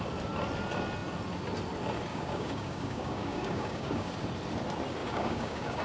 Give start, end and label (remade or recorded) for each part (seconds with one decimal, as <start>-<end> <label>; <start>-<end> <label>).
0.0-2.1 recorded; 2.1-4.1 remade; 4.1-5.0 recorded; 5.0-5.8 remade